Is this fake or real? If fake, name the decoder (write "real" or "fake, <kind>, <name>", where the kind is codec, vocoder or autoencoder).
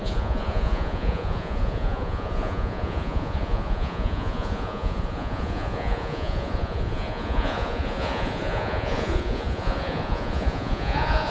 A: fake, vocoder, Vocos